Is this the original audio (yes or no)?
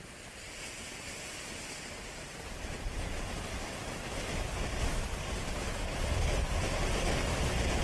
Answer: yes